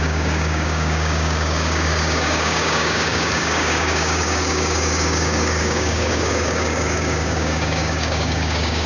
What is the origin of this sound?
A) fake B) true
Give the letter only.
A